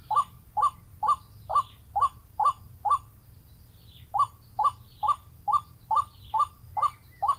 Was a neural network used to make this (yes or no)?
no